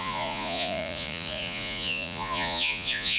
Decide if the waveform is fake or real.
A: fake